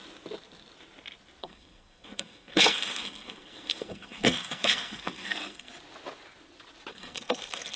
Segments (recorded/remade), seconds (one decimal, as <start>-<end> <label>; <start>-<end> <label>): 0.0-1.4 recorded; 1.4-5.7 remade; 5.7-6.9 recorded; 6.9-7.8 remade

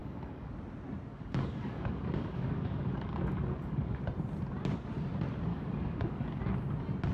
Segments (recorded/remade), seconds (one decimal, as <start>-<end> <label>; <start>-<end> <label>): 0.0-0.5 remade; 0.5-1.1 recorded; 1.1-4.0 remade; 4.0-5.5 recorded; 5.5-6.4 remade; 6.4-7.1 recorded

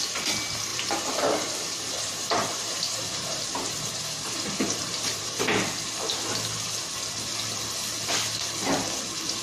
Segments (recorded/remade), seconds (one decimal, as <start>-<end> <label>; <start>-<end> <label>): 0.0-0.7 recorded; 0.7-5.4 remade; 5.4-9.4 recorded